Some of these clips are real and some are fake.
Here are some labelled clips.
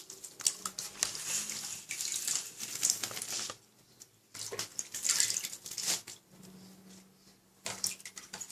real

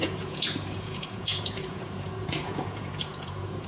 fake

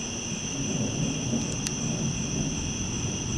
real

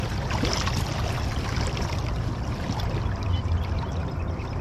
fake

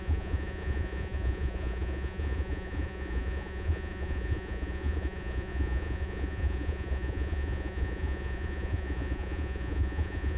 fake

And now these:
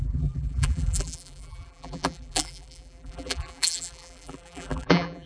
fake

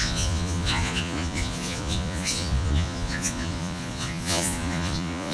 fake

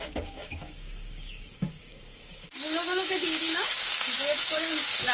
fake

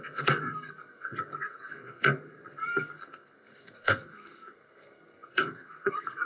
fake